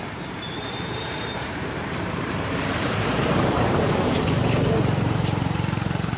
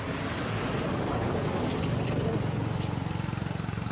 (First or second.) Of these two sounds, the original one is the second